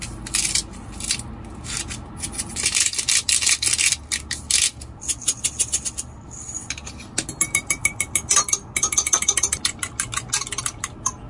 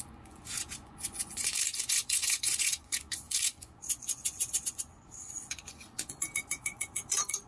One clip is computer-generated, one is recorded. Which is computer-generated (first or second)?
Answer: second